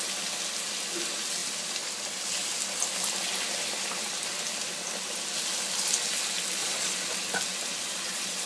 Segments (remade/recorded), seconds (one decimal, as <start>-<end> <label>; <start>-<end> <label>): 0.0-6.6 recorded; 6.6-7.1 remade; 7.1-7.8 recorded; 7.8-8.5 remade